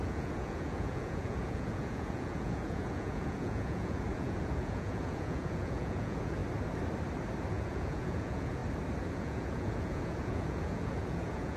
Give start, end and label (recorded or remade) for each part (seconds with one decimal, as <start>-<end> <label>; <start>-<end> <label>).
0.0-6.4 remade; 6.4-7.5 recorded; 7.5-8.6 remade; 8.6-9.1 recorded; 9.1-11.6 remade